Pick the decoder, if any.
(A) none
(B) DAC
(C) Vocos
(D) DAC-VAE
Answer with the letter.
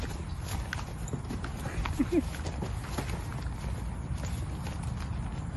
A